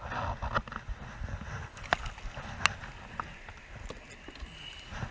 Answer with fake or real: real